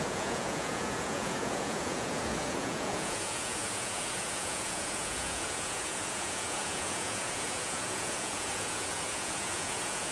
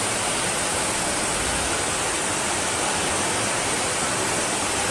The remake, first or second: first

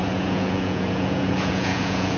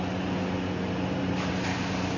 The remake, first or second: first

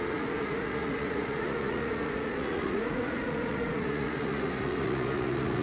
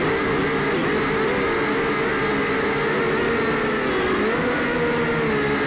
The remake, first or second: first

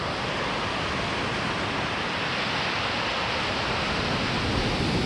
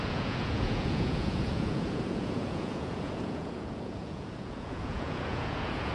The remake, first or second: second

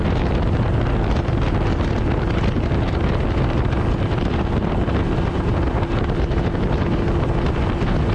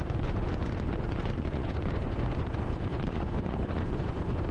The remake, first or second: second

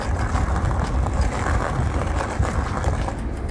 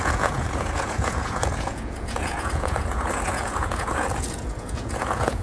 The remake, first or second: second